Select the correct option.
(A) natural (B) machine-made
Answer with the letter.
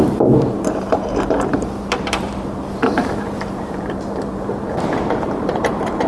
B